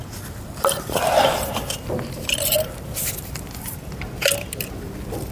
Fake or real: real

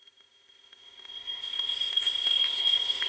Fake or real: fake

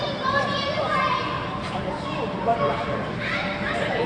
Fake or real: real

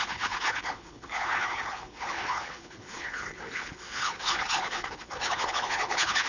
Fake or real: fake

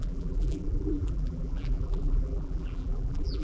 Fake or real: fake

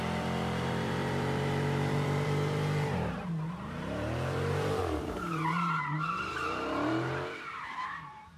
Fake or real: fake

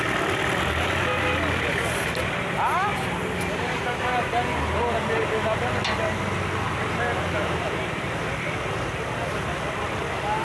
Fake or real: real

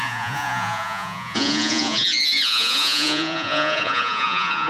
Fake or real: fake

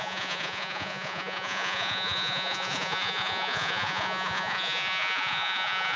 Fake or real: fake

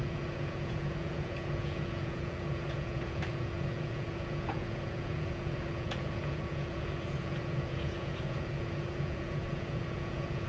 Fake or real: fake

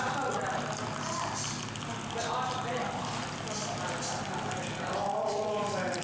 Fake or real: real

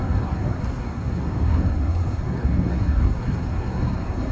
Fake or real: fake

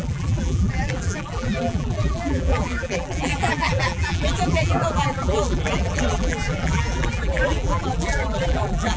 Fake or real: fake